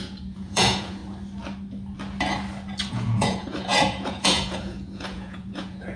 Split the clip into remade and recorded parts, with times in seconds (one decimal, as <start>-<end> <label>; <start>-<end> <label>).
0.0-1.0 remade; 1.0-2.9 recorded; 2.9-6.0 remade